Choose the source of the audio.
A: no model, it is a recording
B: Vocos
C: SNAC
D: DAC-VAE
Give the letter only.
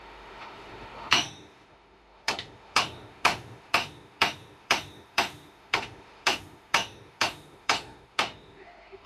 D